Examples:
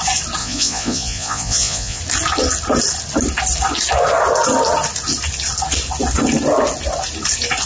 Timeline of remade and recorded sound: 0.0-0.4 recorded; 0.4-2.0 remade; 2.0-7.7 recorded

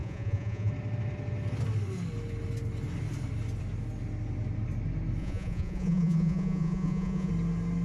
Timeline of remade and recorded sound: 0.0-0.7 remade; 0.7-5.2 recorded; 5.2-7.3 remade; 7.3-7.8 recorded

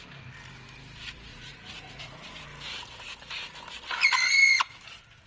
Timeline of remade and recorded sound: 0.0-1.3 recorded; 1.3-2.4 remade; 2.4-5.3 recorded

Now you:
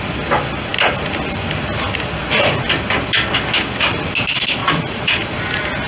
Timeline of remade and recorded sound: 0.0-4.6 recorded; 4.6-5.3 remade; 5.3-5.9 recorded

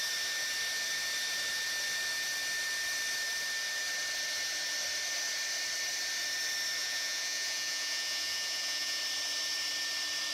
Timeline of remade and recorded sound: 0.0-6.8 recorded; 6.8-9.0 remade; 9.0-10.3 recorded